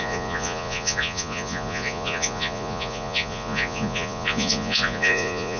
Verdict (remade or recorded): remade